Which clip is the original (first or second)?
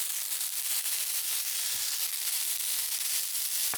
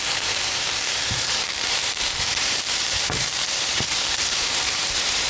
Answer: first